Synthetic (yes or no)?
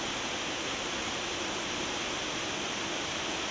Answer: no